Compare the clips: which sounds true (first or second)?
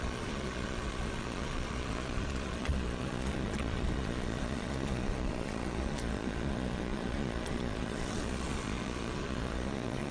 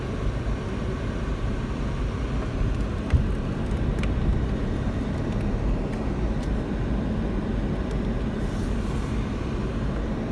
second